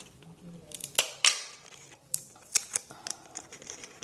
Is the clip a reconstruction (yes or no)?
yes